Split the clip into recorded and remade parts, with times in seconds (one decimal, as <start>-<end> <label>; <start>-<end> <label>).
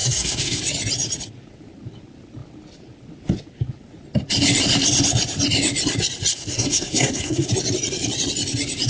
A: 0.0-0.6 remade; 0.6-6.3 recorded; 6.3-7.5 remade; 7.5-8.9 recorded